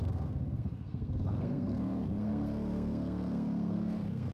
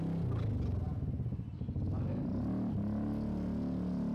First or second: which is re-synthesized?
first